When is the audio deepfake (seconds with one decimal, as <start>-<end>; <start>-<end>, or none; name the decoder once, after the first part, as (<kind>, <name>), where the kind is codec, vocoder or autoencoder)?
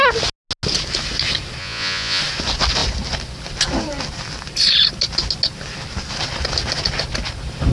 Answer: 1.6-2.2 (vocoder, Vocos)